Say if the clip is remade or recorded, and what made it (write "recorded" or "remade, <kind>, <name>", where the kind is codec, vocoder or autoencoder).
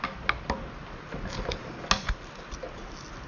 recorded